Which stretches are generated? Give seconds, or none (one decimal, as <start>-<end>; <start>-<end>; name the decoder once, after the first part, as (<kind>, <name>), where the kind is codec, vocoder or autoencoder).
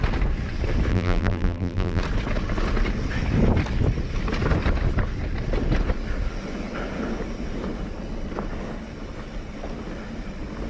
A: 0.9-2.0 (vocoder, BigVGAN v2)